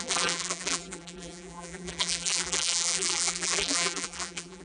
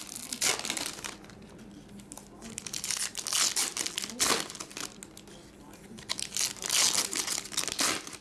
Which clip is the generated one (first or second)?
first